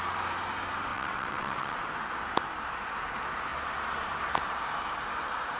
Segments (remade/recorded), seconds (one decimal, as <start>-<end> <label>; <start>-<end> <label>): 0.0-0.9 recorded; 0.9-1.8 remade; 1.8-5.6 recorded